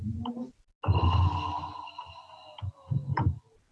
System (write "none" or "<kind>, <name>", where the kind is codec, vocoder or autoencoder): none